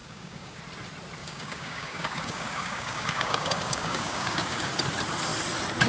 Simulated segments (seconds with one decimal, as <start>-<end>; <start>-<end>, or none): 0.0-0.6; 1.2-4.7